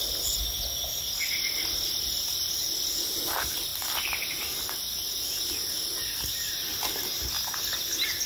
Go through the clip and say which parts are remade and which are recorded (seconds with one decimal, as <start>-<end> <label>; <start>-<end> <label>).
0.0-8.3 recorded